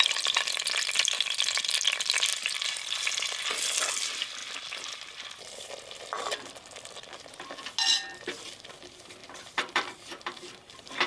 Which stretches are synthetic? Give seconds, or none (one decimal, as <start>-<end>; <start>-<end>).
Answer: 2.3-3.2; 4.4-6.0; 9.2-10.4